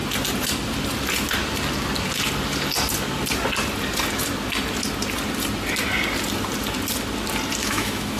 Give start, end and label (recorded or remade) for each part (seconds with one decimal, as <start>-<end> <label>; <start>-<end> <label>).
0.0-7.6 recorded; 7.6-8.2 remade